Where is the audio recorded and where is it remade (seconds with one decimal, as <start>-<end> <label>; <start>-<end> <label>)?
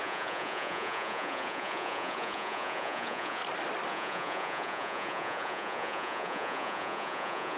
0.0-3.4 remade; 3.4-3.9 recorded; 3.9-7.6 remade